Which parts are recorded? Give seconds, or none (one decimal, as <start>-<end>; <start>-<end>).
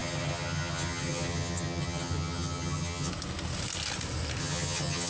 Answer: 3.1-4.4